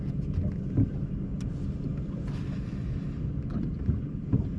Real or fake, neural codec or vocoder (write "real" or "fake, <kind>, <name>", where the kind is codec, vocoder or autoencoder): real